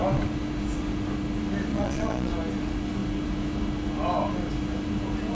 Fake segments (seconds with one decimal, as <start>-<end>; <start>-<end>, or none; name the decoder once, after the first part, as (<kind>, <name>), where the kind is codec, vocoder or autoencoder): 1.7-2.3 (vocoder, Vocos)